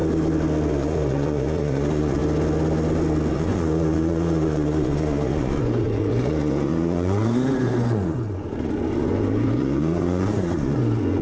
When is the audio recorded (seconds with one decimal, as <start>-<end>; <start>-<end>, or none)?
0.0-0.7; 2.2-3.3